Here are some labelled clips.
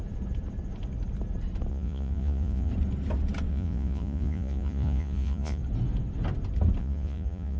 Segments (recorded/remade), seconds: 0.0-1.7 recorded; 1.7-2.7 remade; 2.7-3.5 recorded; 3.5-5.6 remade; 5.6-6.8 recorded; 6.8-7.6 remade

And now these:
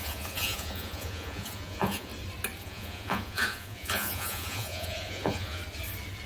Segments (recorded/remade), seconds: 0.0-2.1 remade; 2.1-2.6 recorded; 2.6-5.6 remade; 5.6-6.3 recorded

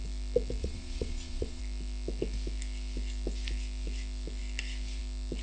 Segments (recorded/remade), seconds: 0.0-0.6 recorded; 0.6-1.6 remade; 1.6-5.4 recorded

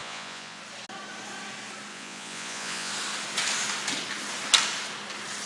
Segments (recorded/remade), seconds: 0.0-0.6 remade; 0.6-1.9 recorded; 1.9-2.9 remade; 2.9-5.5 recorded

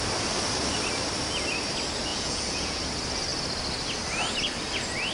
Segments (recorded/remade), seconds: 0.0-2.1 recorded; 2.1-2.8 remade; 2.8-5.1 recorded

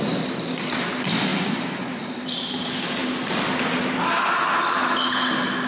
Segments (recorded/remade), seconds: 0.0-5.7 recorded